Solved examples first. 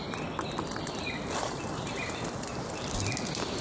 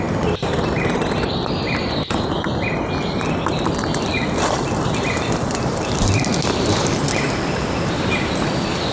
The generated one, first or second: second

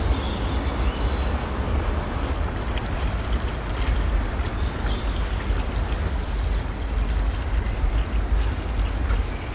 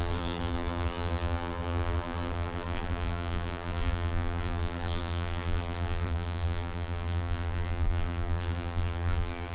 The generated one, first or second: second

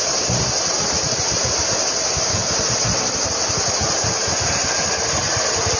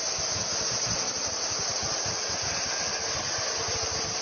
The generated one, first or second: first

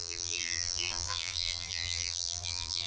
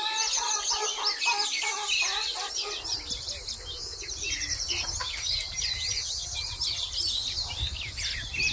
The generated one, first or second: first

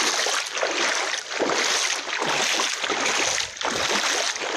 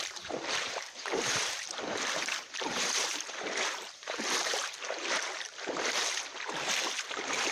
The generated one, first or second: second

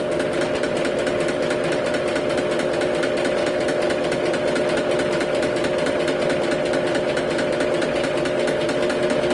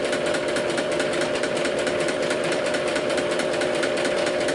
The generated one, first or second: second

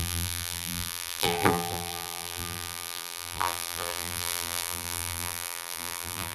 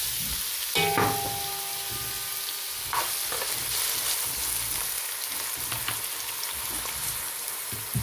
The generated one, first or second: first